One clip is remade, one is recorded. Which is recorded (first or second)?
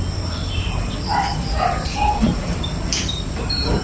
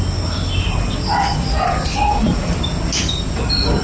second